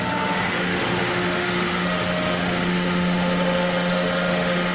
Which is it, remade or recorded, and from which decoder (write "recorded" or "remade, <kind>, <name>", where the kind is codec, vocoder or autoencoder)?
remade, autoencoder, DAC-VAE